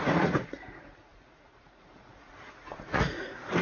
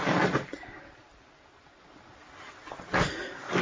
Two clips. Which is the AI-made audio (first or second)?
first